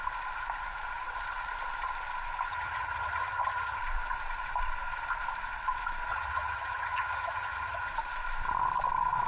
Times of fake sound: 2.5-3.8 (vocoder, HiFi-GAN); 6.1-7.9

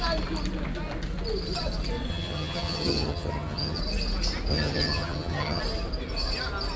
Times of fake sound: 2.1-3.8 (vocoder, HiFi-GAN); 4.5-5.6

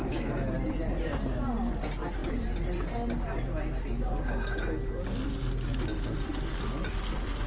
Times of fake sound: none

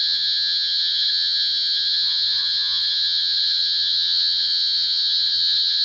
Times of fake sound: 0.0-5.8 (vocoder, HiFi-GAN)